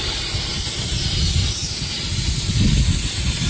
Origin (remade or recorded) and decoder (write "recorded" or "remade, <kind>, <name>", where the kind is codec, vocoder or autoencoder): recorded